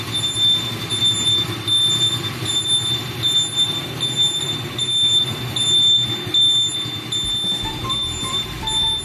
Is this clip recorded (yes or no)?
yes